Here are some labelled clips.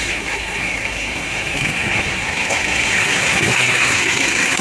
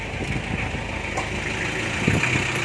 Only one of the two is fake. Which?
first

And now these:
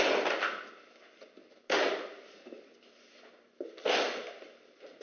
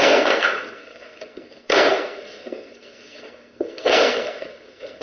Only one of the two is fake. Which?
second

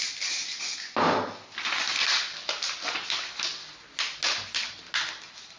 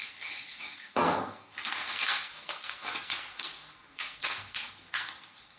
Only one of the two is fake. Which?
second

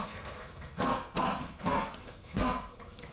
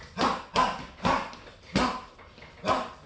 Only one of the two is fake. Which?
first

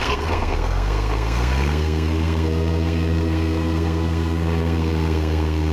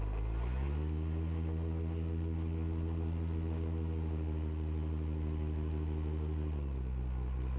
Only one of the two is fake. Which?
first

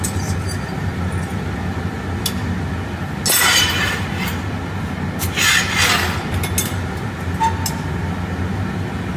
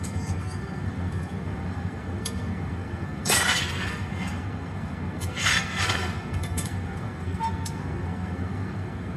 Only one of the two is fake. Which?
second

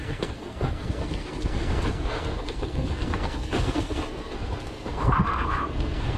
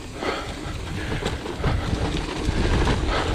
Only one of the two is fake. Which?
first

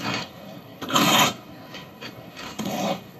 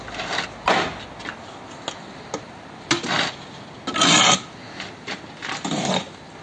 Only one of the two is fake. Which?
first